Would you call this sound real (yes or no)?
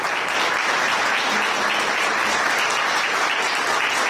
yes